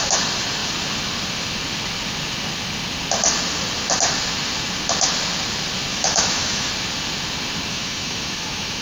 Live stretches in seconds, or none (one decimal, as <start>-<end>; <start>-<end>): 0.0-5.9; 6.7-7.7